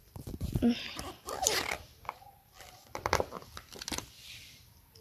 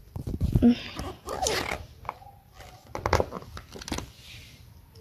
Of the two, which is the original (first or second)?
second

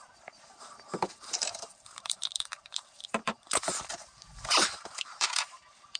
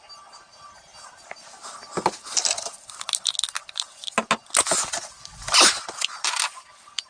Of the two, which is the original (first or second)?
second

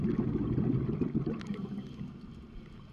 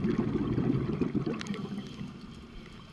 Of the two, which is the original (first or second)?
first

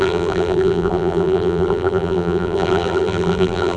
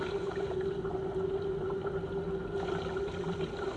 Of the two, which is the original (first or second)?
second